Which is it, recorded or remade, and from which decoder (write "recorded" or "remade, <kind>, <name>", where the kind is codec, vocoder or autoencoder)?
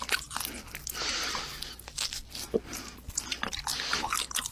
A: recorded